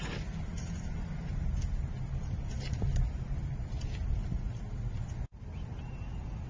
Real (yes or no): yes